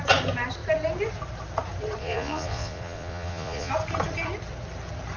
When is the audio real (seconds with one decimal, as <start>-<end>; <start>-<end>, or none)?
0.0-2.0; 3.7-5.2